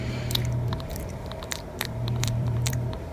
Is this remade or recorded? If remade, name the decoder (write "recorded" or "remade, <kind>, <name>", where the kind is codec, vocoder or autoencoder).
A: remade, vocoder, BigVGAN v2